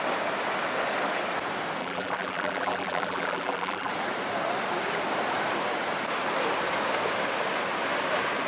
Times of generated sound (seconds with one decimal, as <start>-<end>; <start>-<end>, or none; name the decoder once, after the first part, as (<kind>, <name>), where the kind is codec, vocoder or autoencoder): 1.8-3.9 (vocoder, BigVGAN v2)